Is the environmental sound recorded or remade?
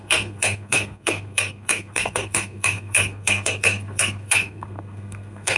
remade